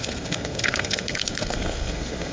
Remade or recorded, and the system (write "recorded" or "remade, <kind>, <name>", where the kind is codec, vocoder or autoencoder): remade, codec, SNAC